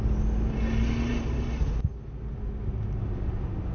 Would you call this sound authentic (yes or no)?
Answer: yes